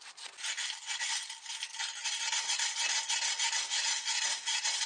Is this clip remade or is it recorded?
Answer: recorded